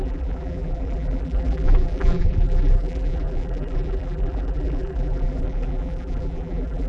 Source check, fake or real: fake